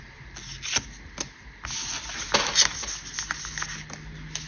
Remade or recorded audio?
recorded